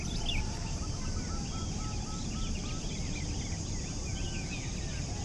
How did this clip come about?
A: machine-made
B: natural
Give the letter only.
B